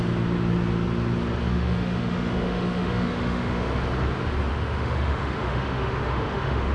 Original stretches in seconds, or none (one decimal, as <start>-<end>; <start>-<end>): 0.0-1.5; 3.7-4.5